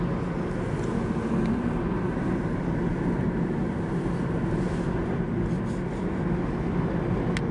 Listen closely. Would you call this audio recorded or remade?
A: recorded